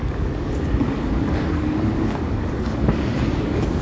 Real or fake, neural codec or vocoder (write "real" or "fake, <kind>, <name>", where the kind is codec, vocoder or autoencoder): fake, codec, DAC